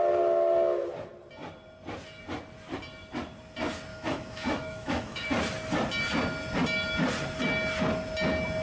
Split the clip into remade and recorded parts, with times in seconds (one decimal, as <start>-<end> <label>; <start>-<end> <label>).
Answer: 0.0-3.9 recorded; 3.9-5.3 remade; 5.3-8.6 recorded

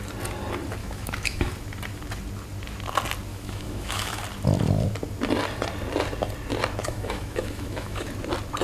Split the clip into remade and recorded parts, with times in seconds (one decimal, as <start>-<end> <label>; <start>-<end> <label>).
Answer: 0.0-0.8 recorded; 0.8-1.5 remade; 1.5-3.3 recorded; 3.3-4.2 remade; 4.2-6.8 recorded; 6.8-8.1 remade; 8.1-8.6 recorded

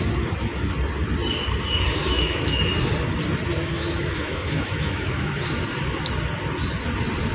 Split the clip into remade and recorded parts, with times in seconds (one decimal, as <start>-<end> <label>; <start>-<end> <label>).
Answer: 0.0-2.0 recorded; 2.0-2.7 remade; 2.7-3.7 recorded; 3.7-5.3 remade; 5.3-7.3 recorded

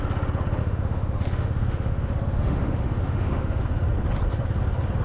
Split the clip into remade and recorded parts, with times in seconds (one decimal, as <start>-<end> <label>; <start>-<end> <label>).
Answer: 0.0-0.6 recorded; 0.6-3.6 remade; 3.6-5.0 recorded

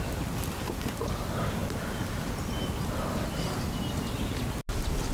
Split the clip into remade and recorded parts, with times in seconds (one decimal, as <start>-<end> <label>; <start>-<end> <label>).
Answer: 0.0-5.1 recorded

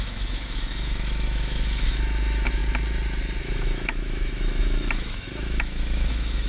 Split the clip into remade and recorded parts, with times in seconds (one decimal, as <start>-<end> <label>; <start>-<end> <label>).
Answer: 0.0-2.6 remade; 2.6-3.4 recorded; 3.4-6.5 remade